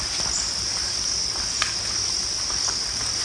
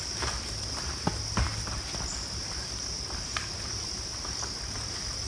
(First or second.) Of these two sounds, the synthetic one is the second